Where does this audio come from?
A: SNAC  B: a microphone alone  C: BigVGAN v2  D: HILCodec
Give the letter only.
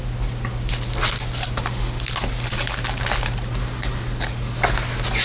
B